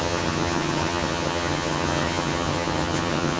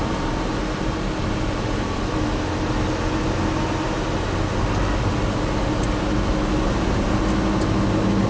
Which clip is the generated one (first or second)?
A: first